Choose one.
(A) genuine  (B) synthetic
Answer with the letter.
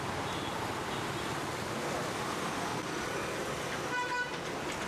A